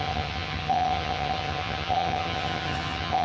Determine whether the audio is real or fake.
fake